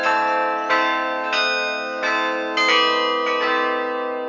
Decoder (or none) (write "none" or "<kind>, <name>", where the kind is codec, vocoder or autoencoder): none